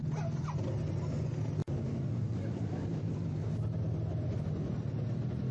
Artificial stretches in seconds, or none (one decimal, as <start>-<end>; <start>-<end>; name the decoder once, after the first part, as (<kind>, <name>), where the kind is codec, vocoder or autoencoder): none